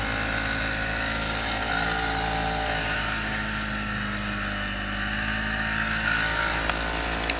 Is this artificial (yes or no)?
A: no